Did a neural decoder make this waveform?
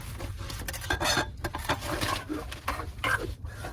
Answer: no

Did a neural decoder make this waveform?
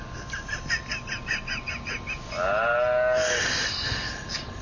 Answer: no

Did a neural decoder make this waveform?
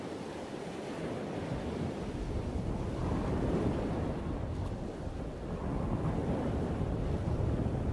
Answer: no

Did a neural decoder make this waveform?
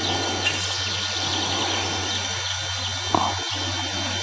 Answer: no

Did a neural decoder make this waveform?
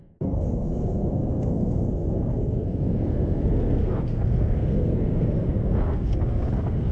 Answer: yes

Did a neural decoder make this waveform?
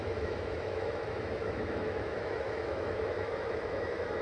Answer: yes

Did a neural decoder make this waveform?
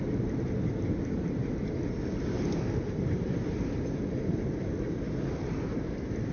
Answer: no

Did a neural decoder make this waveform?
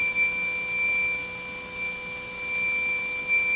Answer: no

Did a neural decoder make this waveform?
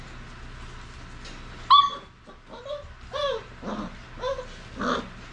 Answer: no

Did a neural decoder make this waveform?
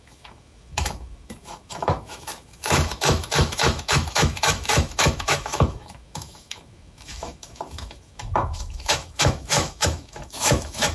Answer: yes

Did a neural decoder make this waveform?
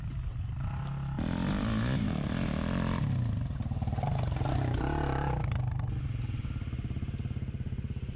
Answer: no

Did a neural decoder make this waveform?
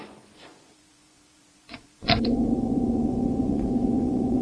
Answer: yes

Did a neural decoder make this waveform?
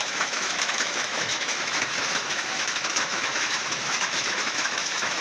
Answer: yes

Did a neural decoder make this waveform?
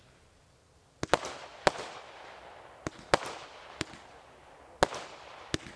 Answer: no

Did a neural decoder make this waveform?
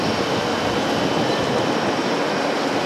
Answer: no